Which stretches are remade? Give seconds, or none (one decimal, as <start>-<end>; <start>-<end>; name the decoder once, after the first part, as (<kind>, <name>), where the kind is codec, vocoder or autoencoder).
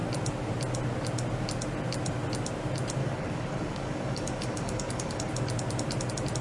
3.0-5.3 (codec, DAC)